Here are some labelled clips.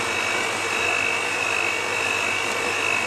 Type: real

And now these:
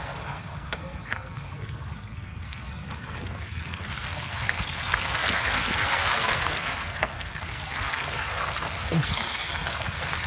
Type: fake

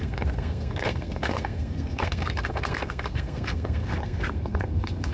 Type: fake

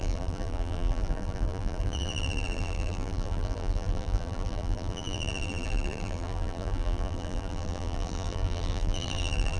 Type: fake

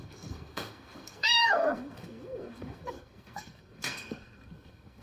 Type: fake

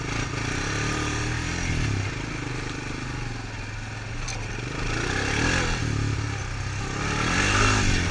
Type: real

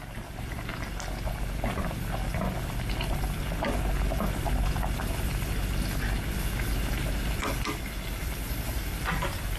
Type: real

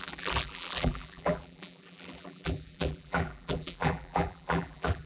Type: fake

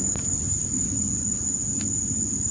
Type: real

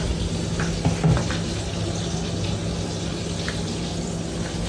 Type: real